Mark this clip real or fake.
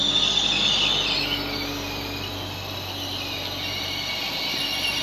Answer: real